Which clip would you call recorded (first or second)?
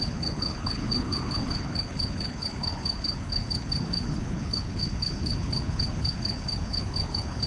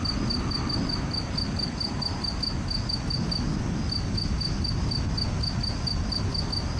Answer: second